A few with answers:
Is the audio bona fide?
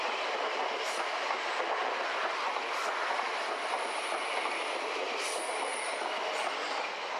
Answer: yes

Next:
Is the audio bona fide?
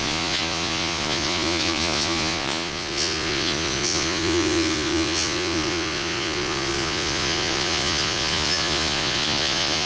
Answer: no